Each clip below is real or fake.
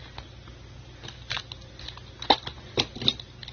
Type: real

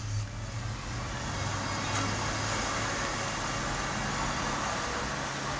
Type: real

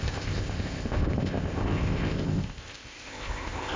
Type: fake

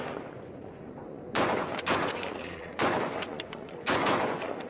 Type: fake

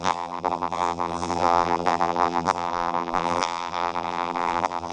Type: fake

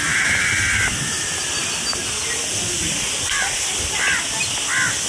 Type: real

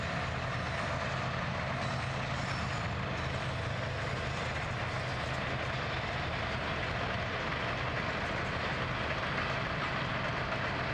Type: real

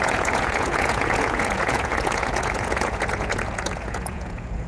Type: fake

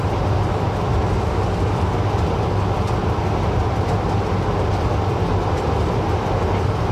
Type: real